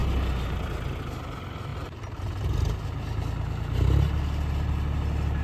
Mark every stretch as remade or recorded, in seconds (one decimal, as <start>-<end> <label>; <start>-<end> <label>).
0.0-5.4 recorded